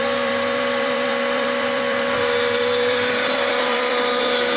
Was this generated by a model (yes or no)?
yes